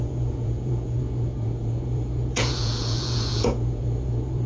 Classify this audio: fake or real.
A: fake